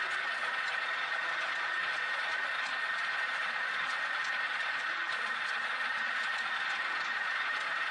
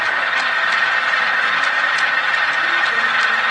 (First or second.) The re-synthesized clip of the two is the first